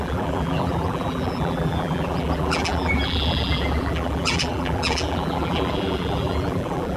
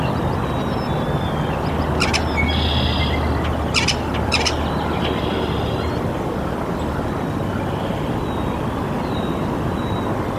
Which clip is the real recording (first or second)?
second